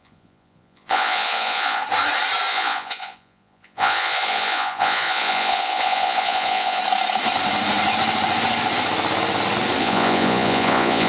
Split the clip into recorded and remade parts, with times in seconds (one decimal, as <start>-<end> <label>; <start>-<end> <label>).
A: 0.0-1.8 remade; 1.8-2.5 recorded; 2.5-6.8 remade; 6.8-9.8 recorded; 9.8-11.1 remade